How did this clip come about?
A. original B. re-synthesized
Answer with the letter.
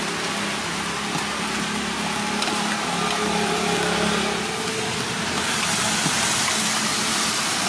A